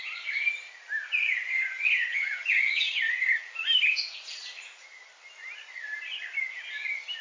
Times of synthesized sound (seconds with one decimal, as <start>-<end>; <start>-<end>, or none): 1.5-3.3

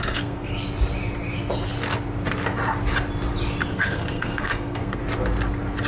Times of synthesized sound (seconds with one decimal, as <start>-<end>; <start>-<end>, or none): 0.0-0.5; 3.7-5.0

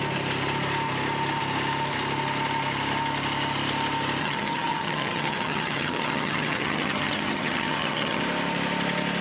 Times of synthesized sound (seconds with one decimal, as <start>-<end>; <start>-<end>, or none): 4.2-8.2

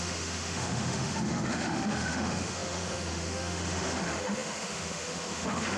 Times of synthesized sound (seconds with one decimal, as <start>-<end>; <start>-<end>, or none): 0.0-5.8